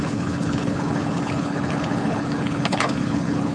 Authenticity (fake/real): fake